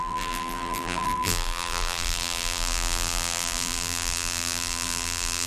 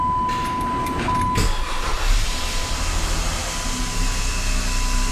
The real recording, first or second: second